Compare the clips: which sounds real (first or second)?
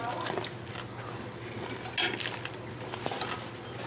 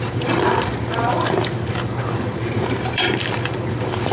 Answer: first